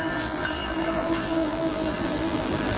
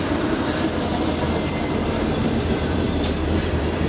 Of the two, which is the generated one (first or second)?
first